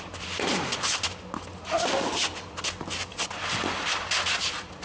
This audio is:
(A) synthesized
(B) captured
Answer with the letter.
B